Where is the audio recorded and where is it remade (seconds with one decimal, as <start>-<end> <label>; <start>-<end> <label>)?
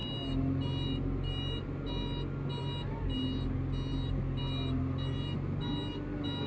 0.0-6.5 recorded